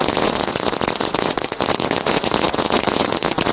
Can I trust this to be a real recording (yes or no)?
no